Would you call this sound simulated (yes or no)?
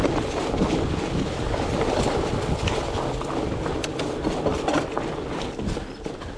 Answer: no